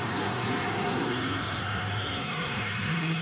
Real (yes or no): no